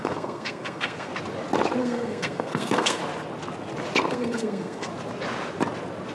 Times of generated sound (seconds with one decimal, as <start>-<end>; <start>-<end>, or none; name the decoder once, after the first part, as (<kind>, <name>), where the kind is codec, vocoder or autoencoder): 0.0-1.1 (codec, SNAC); 1.8-3.0; 4.1-4.9